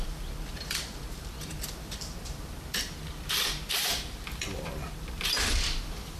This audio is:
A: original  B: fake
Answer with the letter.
B